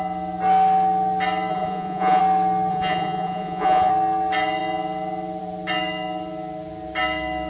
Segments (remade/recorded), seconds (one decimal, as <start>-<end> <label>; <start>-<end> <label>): 0.0-1.5 recorded; 1.5-2.2 remade; 2.2-2.7 recorded; 2.7-3.9 remade; 3.9-7.5 recorded